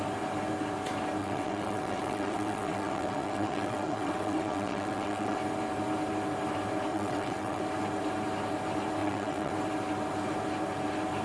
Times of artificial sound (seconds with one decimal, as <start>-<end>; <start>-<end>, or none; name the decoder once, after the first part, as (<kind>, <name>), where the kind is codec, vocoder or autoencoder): 1.2-5.4 (vocoder, WaveNeXt); 6.9-7.6; 9.0-9.5